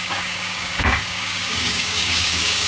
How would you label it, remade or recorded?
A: remade